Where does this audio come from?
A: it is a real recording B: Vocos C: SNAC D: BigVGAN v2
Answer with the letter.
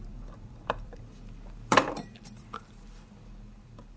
D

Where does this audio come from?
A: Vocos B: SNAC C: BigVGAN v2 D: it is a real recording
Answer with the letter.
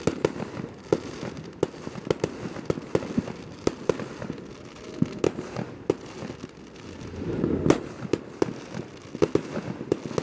D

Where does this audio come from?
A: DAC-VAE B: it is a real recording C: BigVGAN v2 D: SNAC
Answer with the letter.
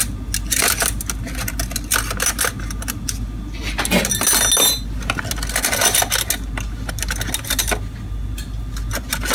B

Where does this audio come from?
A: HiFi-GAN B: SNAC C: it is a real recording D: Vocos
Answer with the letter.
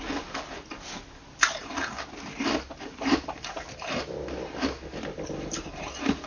C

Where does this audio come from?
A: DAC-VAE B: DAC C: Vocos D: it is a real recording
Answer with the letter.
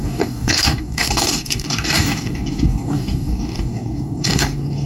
B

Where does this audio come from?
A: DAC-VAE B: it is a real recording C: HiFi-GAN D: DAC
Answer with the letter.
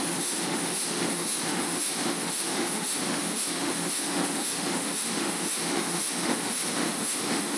A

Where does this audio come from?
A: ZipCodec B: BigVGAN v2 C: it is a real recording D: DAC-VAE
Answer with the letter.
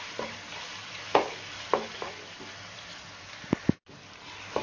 B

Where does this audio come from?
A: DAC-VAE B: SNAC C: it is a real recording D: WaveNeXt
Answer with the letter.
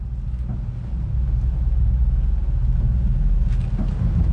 C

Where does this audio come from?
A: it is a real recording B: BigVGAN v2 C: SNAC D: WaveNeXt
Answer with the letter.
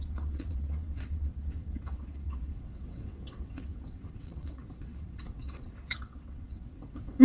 D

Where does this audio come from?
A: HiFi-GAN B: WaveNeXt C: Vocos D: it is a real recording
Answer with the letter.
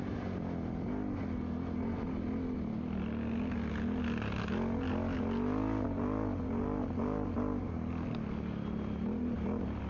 D